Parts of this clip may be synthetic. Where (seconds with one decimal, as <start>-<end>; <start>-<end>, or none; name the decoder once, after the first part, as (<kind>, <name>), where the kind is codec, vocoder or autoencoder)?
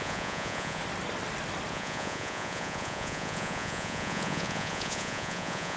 0.0-0.8 (vocoder, Vocos); 1.7-5.8